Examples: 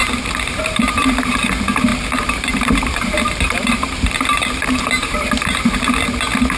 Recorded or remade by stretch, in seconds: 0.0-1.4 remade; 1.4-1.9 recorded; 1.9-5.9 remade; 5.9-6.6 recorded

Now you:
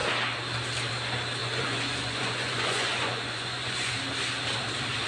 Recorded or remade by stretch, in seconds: 0.0-1.4 recorded; 1.4-3.9 remade; 3.9-5.1 recorded

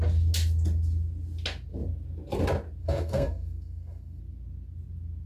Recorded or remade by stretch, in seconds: 0.0-2.8 recorded; 2.8-4.2 remade; 4.2-5.3 recorded

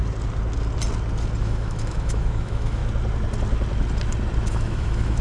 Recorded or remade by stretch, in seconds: 0.0-1.4 recorded; 1.4-2.8 remade; 2.8-4.5 recorded; 4.5-5.2 remade

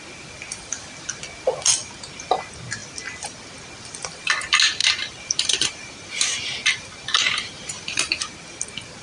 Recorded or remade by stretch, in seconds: 0.0-4.8 recorded; 4.8-8.1 remade; 8.1-9.0 recorded

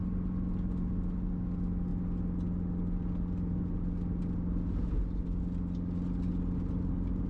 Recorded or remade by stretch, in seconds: 0.0-7.3 recorded

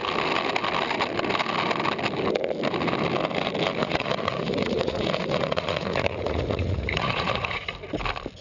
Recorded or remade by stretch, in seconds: 0.0-3.8 recorded; 3.8-7.7 remade; 7.7-8.4 recorded